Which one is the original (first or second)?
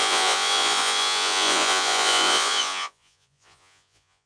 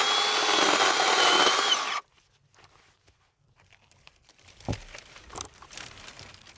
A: second